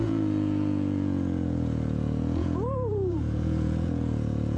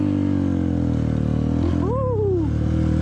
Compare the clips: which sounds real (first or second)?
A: second